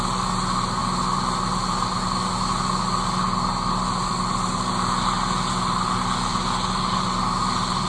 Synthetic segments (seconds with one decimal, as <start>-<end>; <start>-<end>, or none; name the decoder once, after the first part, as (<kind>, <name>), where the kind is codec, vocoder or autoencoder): none